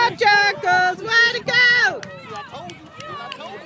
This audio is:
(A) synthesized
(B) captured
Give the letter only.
B